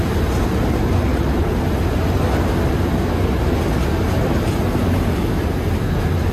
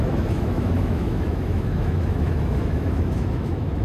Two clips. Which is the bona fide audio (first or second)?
first